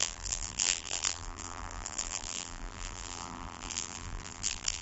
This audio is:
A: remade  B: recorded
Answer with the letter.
A